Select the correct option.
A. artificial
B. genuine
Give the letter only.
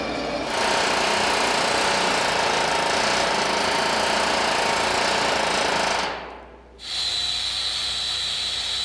B